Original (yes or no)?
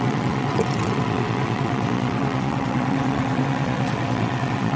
no